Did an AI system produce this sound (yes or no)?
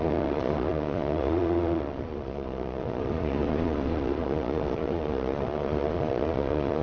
yes